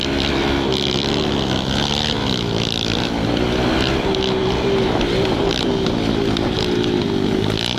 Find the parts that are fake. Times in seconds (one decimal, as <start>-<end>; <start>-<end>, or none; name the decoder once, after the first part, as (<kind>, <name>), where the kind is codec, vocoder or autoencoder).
none